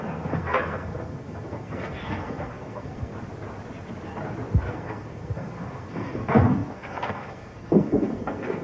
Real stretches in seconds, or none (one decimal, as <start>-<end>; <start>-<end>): 3.1-4.7